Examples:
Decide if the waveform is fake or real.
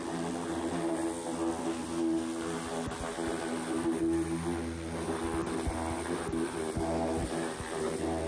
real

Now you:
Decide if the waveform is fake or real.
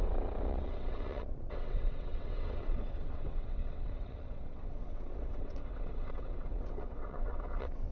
fake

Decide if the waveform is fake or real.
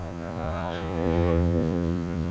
fake